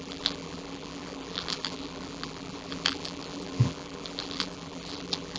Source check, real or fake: fake